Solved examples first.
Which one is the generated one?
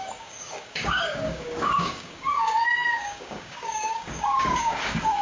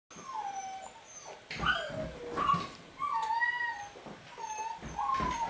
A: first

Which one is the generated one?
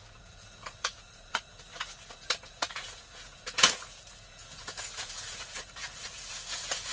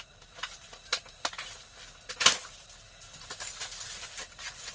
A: first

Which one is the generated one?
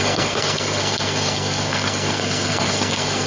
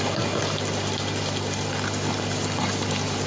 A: first